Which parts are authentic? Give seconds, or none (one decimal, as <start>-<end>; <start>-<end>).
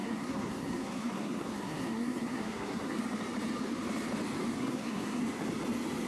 3.0-4.6; 5.2-6.1